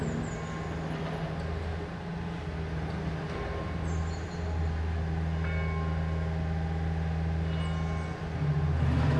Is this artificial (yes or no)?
no